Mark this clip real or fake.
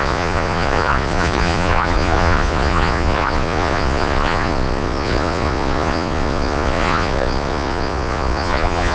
fake